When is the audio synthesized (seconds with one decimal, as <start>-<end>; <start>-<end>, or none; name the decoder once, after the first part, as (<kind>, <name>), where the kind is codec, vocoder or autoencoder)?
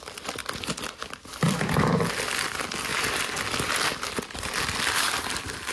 0.4-1.8 (vocoder, BigVGAN v2)